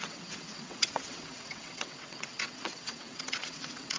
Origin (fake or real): fake